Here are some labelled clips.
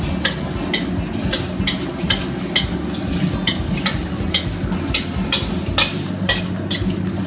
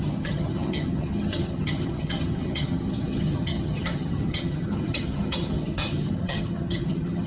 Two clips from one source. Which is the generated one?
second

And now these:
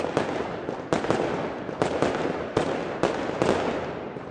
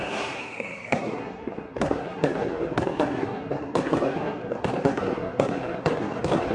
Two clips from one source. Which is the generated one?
second